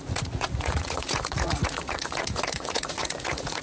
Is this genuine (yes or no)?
no